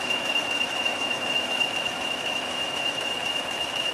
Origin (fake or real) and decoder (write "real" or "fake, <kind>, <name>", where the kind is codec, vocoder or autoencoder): fake, autoencoder, DAC-VAE